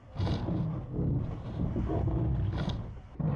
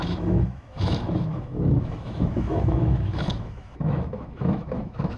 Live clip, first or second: first